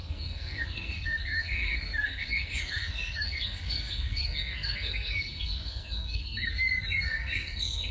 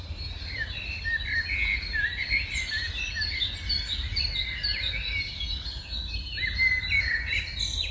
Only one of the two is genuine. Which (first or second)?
second